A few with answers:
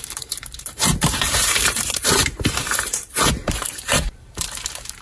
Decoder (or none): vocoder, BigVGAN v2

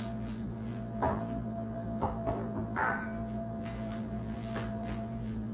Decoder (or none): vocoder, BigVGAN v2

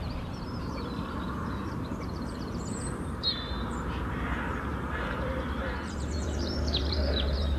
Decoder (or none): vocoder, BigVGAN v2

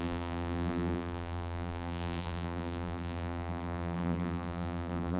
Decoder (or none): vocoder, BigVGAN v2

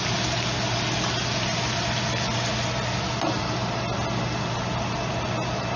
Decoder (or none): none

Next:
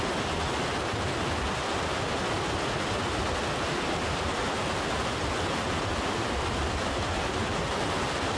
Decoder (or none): none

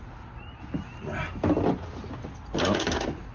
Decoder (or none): none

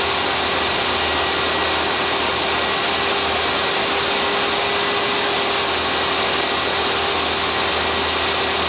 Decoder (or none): none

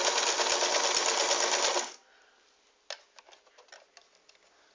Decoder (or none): none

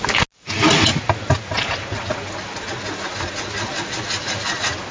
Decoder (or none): none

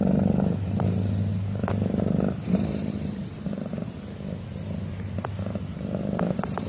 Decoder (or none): vocoder, BigVGAN v2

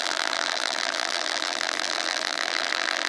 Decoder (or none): vocoder, BigVGAN v2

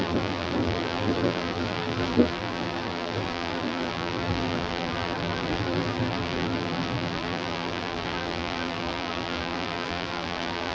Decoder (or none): vocoder, BigVGAN v2